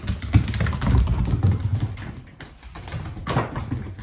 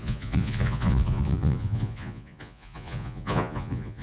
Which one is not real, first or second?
second